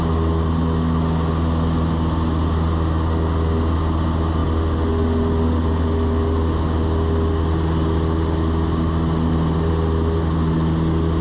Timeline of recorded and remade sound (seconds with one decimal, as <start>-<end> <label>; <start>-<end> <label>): 0.0-11.2 recorded